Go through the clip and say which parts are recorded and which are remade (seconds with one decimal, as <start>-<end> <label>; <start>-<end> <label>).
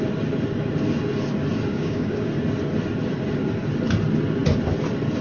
0.0-1.7 recorded; 1.7-2.3 remade; 2.3-5.2 recorded